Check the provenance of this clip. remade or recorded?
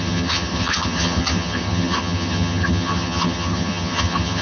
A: remade